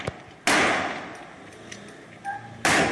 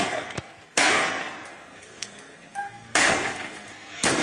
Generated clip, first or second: second